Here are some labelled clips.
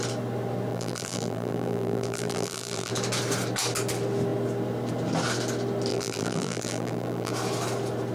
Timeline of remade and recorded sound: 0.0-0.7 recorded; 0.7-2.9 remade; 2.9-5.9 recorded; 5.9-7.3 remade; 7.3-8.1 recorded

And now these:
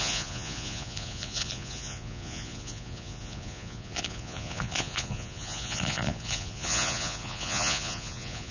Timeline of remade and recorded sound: 0.0-8.5 remade

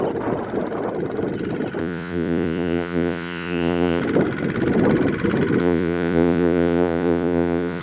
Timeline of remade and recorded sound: 0.0-1.8 recorded; 1.8-4.0 remade; 4.0-5.6 recorded; 5.6-7.8 remade